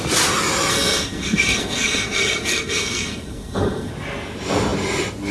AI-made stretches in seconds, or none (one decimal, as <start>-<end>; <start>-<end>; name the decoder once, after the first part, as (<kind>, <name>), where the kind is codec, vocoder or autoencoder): 0.7-3.9 (codec, SNAC)